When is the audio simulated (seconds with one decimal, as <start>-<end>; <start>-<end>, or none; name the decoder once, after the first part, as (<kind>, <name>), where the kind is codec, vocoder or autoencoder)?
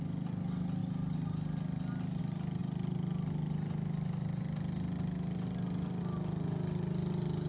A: none